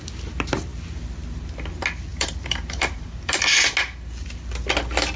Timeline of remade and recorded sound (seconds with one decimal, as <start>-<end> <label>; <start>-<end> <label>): 0.0-2.1 recorded; 2.1-3.4 remade; 3.4-5.2 recorded

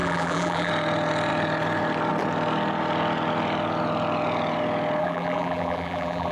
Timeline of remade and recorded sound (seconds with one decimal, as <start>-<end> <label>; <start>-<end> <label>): 0.0-0.7 remade; 0.7-5.0 recorded; 5.0-6.3 remade

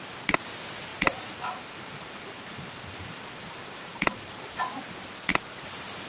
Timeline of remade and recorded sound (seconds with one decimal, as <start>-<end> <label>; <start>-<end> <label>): 0.0-0.9 recorded; 0.9-4.6 remade; 4.6-5.3 recorded; 5.3-6.1 remade